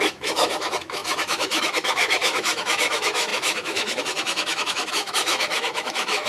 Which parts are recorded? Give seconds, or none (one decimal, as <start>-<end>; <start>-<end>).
none